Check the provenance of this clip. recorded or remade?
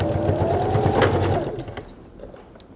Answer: recorded